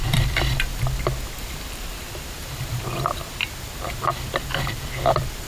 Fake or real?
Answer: fake